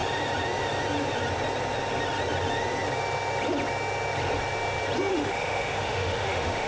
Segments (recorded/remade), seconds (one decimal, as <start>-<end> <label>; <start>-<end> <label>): 0.0-5.1 recorded; 5.1-6.7 remade